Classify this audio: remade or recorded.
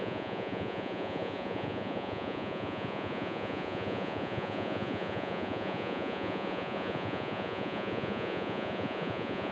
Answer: remade